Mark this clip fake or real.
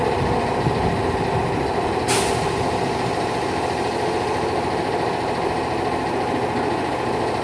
real